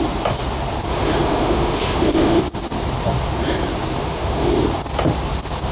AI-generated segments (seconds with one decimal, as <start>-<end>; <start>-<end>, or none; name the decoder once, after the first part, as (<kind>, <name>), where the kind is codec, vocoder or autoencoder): 0.9-2.4 (autoencoder, DAC-VAE); 4.0-4.5